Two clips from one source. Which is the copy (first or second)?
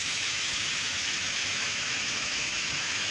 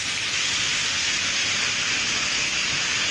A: first